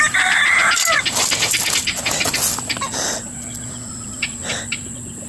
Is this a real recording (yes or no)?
yes